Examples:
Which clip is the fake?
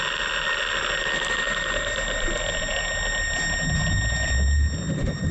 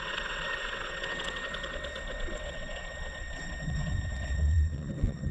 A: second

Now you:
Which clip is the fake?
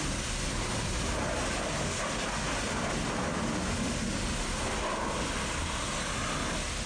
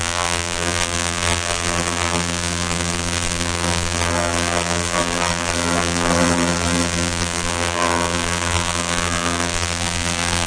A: second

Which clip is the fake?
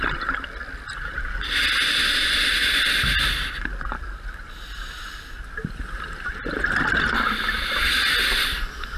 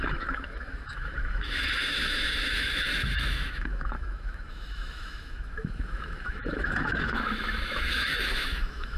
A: second